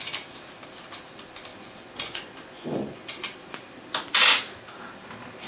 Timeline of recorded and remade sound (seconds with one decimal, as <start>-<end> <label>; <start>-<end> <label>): 0.0-1.5 recorded; 1.5-3.1 remade; 3.1-5.5 recorded